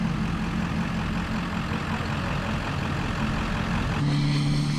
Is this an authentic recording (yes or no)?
yes